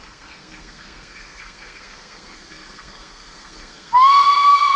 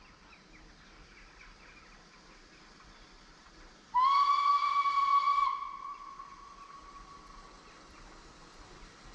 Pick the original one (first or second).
second